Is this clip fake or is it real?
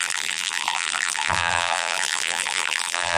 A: fake